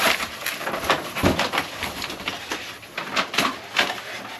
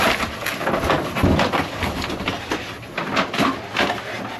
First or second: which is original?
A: second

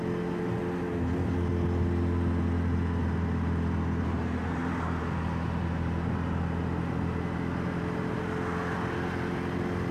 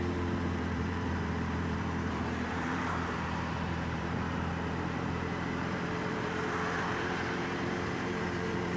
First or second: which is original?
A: first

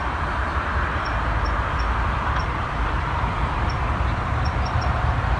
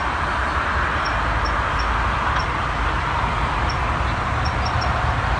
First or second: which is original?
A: second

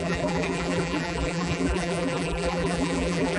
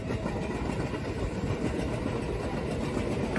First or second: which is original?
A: second